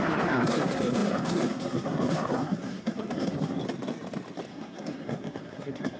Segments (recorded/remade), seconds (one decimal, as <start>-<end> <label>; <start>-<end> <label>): 0.0-3.6 remade; 3.6-4.5 recorded; 4.5-6.0 remade